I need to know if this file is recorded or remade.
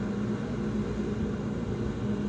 recorded